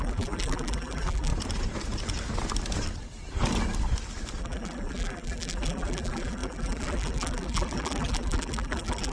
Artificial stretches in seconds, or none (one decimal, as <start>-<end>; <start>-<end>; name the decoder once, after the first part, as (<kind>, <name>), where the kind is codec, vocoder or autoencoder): 0.0-1.3 (vocoder, BigVGAN v2); 4.4-9.1